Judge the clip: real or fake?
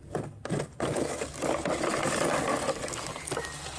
real